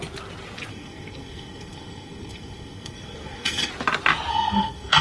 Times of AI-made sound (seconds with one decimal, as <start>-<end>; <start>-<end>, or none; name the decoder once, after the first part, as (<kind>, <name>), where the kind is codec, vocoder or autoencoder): 0.7-3.7 (codec, SNAC); 4.3-5.0